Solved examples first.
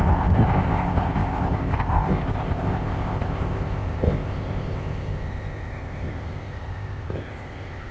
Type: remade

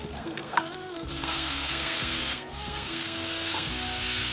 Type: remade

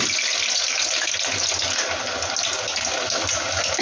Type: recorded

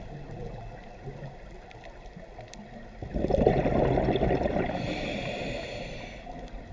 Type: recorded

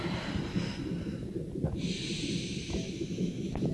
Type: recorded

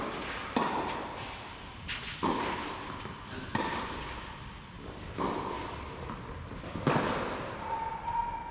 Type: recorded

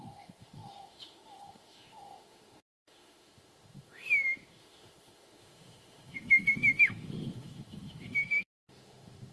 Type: remade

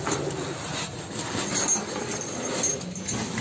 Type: recorded